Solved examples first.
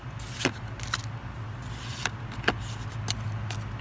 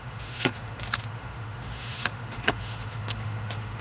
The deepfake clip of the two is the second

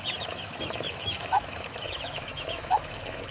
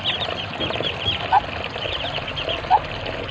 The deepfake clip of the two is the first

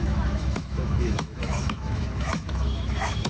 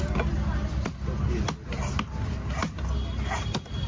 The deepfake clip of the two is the first